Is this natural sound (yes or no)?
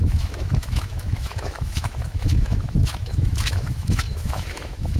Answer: no